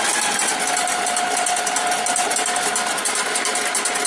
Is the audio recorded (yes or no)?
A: yes